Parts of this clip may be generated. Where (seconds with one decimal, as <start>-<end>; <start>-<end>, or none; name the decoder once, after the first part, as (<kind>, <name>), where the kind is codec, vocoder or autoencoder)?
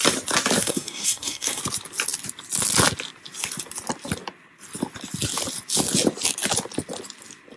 0.6-1.6 (codec, SNAC)